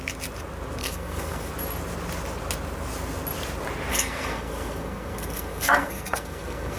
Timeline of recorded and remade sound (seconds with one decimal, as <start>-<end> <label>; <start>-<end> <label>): 0.0-0.8 recorded; 0.8-1.5 remade; 1.5-3.9 recorded; 3.9-6.8 remade